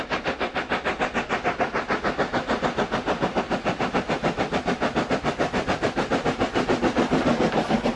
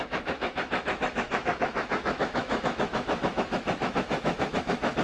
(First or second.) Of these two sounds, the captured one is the first